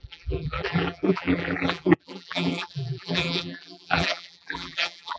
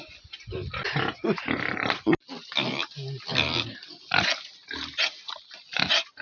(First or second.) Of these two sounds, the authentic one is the second